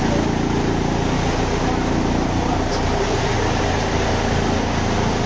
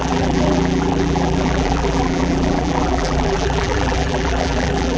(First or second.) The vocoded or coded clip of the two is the second